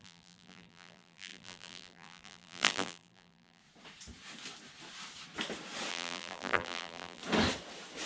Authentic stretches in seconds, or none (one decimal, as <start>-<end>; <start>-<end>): 3.6-5.9; 7.2-8.1

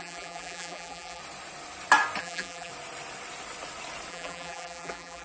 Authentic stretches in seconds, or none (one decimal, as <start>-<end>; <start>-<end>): 1.2-2.2; 2.7-4.1

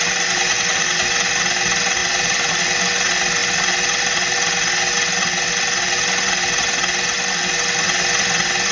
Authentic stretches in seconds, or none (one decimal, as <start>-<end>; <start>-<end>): 0.0-2.0; 2.6-8.7

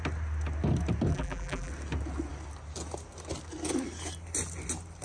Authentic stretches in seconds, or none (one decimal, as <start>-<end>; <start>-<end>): 0.0-1.1; 1.7-5.0